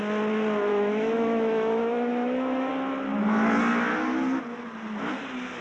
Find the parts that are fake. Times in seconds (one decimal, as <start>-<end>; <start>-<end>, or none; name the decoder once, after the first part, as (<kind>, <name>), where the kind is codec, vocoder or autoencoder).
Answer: 0.7-2.7 (autoencoder, DAC-VAE)